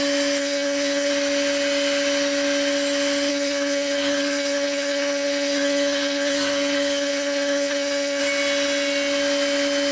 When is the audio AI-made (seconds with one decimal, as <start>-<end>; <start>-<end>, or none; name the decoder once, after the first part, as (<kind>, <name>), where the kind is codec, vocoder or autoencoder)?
0.4-1.1 (codec, SNAC); 3.3-8.2